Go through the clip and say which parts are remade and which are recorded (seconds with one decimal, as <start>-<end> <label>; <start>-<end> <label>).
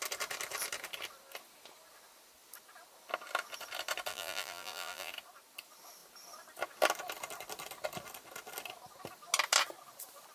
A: 0.0-4.1 recorded; 4.1-5.1 remade; 5.1-10.3 recorded